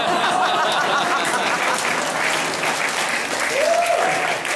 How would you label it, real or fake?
real